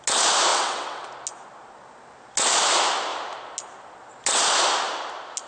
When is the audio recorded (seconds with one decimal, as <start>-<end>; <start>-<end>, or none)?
0.0-0.5; 1.1-5.5